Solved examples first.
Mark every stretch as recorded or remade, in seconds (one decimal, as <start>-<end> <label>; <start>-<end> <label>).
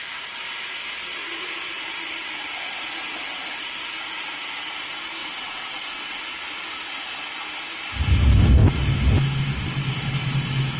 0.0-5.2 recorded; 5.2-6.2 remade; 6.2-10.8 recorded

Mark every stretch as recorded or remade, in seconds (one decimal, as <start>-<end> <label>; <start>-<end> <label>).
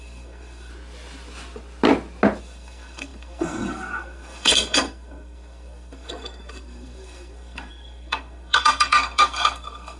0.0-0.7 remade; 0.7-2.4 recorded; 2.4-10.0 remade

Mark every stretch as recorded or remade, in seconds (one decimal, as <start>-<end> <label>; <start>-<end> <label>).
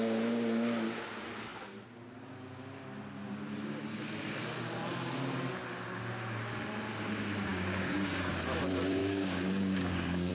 0.0-7.5 recorded; 7.5-8.3 remade; 8.3-9.0 recorded; 9.0-10.3 remade